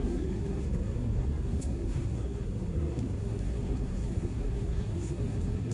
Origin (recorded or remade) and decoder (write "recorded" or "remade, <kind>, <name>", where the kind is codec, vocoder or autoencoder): remade, codec, SNAC